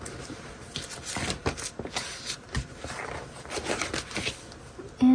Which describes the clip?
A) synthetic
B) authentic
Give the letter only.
B